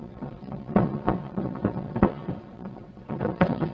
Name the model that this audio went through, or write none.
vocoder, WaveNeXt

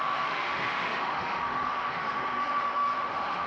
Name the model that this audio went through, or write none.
autoencoder, DAC-VAE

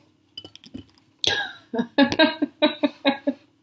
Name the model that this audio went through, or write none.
none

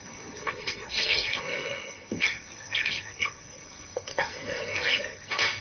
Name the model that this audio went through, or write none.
codec, SNAC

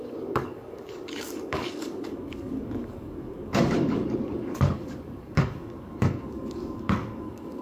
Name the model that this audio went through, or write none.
codec, DAC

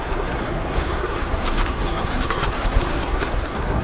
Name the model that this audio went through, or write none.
codec, SNAC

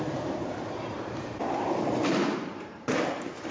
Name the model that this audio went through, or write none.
vocoder, BigVGAN v2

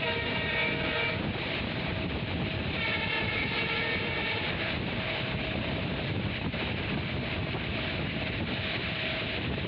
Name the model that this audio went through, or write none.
vocoder, BigVGAN v2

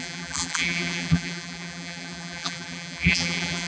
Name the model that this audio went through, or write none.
vocoder, BigVGAN v2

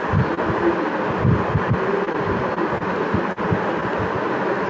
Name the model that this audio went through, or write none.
none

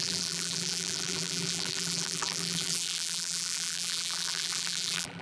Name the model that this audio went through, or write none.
vocoder, BigVGAN v2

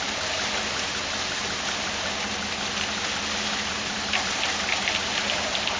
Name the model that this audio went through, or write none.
none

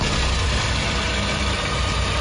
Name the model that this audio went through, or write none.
none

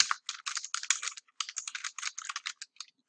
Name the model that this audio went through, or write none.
none